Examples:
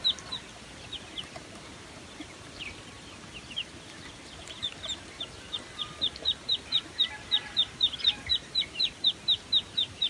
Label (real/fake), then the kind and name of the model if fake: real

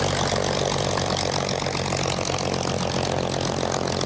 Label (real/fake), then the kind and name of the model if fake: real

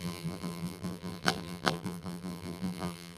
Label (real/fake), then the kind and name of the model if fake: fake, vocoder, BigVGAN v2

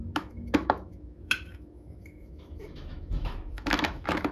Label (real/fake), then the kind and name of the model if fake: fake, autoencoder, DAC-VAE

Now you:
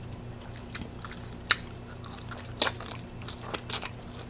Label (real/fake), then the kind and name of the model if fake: real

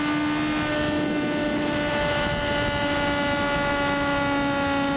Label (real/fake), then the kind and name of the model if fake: real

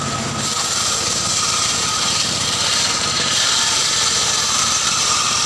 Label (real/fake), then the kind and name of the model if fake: fake, vocoder, BigVGAN v2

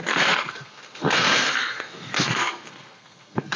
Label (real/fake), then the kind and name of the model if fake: fake, codec, SNAC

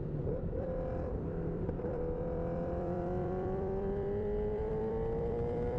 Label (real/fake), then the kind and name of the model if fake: fake, vocoder, BigVGAN v2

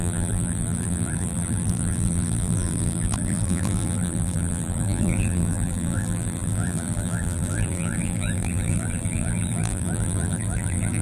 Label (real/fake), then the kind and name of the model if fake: fake, vocoder, BigVGAN v2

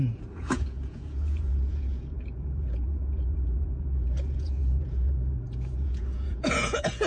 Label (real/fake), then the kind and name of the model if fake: fake, vocoder, Vocos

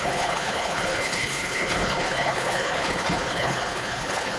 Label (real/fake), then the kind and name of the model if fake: fake, codec, HILCodec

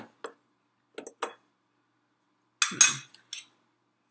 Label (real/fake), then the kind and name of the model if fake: real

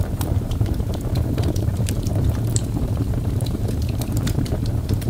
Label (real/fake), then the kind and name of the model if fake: fake, vocoder, BigVGAN v2